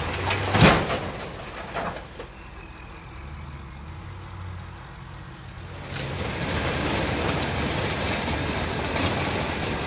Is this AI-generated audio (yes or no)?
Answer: no